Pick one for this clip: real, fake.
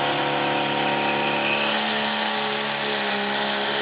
real